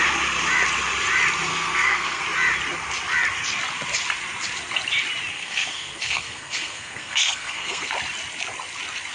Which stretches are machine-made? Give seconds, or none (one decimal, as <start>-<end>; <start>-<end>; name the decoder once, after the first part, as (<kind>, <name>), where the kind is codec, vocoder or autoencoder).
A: 1.5-2.2 (codec, SNAC); 5.3-7.9